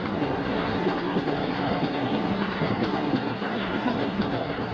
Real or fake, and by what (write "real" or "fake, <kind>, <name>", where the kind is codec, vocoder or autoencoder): fake, codec, SNAC